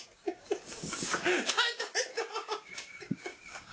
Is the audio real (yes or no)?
no